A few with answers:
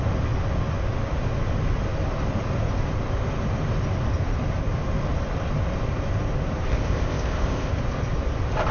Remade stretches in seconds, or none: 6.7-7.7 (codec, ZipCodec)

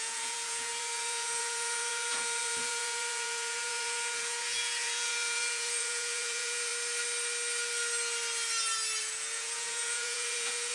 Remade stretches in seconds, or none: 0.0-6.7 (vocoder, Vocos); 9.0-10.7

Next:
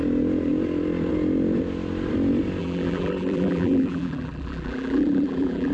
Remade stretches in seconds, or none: 2.6-5.7 (vocoder, BigVGAN v2)

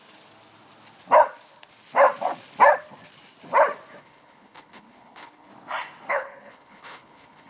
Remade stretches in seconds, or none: 4.0-5.5 (codec, HILCodec); 6.1-7.5

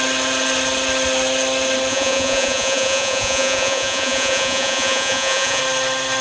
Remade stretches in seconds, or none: 1.9-5.6 (vocoder, Vocos)